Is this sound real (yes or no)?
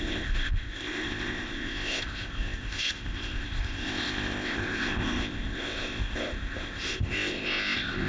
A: no